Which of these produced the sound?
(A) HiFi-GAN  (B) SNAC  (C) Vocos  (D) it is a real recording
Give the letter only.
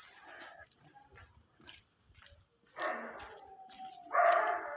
D